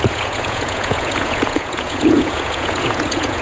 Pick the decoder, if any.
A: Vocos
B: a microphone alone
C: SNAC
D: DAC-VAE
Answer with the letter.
A